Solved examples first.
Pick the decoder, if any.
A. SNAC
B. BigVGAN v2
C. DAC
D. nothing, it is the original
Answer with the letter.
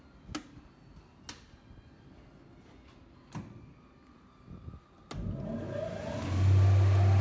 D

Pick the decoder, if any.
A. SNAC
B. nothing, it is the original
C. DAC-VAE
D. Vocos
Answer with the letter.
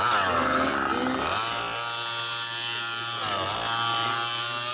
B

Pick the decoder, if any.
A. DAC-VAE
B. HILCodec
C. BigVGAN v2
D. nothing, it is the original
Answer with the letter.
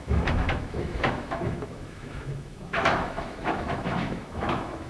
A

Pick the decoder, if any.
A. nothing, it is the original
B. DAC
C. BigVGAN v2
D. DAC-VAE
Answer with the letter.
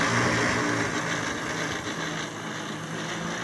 A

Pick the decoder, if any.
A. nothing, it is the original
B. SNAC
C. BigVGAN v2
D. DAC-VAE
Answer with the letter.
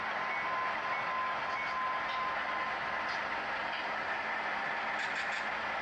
A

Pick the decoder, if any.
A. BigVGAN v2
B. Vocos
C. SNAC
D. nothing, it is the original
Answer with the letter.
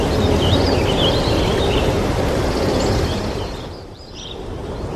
A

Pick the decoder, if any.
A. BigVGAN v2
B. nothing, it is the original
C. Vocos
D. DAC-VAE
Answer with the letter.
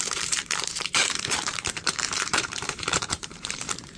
A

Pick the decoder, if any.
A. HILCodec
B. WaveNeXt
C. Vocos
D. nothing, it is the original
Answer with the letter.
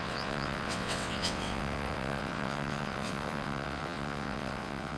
B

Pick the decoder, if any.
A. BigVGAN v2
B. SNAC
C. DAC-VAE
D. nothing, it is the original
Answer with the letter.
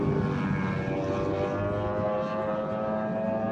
D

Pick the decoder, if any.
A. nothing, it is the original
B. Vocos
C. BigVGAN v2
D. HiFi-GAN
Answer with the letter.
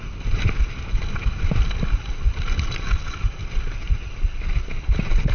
A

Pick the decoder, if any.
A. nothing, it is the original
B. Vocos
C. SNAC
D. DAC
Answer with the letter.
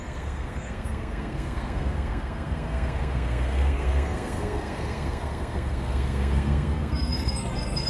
C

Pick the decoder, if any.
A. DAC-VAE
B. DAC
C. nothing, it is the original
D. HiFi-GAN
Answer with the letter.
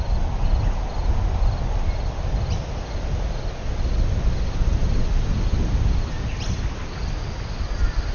C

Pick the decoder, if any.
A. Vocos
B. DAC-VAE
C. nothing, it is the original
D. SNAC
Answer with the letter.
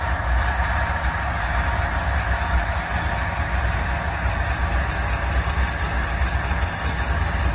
C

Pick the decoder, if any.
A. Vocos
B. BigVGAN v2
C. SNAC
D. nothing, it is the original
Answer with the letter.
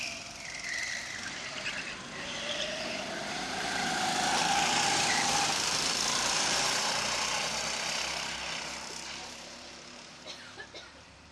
B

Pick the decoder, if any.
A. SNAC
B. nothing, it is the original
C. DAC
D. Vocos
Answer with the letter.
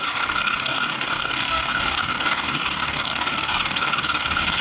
C